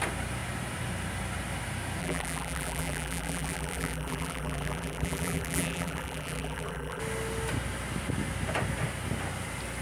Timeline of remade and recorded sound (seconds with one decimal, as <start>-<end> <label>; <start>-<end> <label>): 0.0-2.0 recorded; 2.0-7.0 remade; 7.0-9.8 recorded

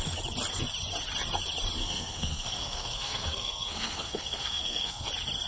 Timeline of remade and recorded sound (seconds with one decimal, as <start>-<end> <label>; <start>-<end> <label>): 0.0-1.8 recorded; 1.8-5.1 remade; 5.1-5.5 recorded